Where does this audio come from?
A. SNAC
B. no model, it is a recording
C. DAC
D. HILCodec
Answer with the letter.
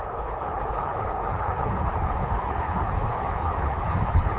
D